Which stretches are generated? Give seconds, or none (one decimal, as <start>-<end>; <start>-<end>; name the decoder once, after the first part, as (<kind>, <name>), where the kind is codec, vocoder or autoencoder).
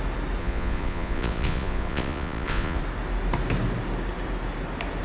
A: 0.4-2.8 (vocoder, Vocos)